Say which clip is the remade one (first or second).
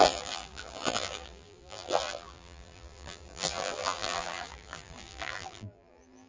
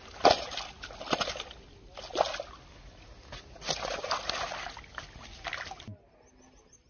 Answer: first